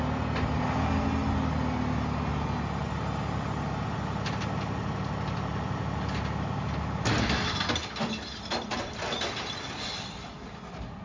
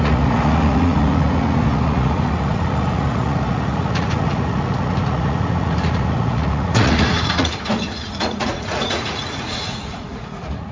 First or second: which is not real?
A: second